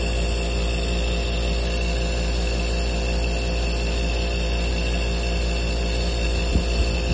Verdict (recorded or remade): recorded